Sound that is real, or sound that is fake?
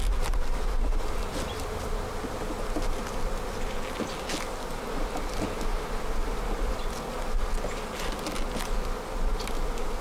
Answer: real